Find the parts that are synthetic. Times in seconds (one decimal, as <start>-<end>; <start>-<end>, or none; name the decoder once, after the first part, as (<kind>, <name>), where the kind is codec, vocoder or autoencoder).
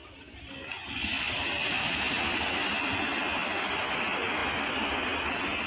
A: none